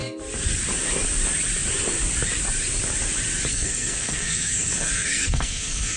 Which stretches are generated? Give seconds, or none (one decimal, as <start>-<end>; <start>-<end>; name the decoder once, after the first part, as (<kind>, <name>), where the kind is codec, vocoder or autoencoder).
3.5-6.0 (codec, SNAC)

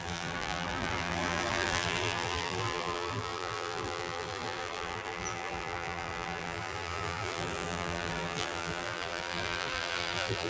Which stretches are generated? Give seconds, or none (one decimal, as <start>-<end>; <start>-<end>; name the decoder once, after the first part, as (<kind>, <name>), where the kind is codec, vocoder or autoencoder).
0.0-10.5 (vocoder, BigVGAN v2)

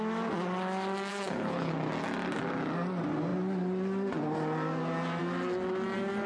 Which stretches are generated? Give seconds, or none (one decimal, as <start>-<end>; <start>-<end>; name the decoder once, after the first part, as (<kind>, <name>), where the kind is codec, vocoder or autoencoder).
1.1-1.7 (codec, HILCodec)

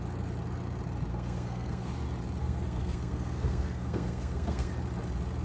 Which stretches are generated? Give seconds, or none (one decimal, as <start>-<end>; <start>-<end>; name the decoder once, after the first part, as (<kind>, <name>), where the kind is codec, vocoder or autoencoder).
1.1-1.9 (codec, SNAC); 2.4-4.7

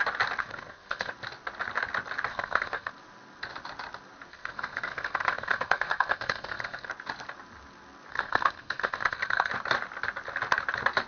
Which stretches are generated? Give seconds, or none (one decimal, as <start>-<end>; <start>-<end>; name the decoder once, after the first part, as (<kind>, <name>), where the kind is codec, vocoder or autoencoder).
0.4-1.1 (codec, SNAC); 2.3-2.9; 4.3-6.9; 8.1-9.5